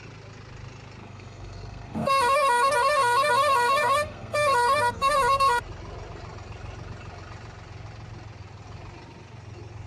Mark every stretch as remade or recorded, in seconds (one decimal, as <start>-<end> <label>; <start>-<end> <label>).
0.0-1.0 recorded; 1.0-5.6 remade; 5.6-9.9 recorded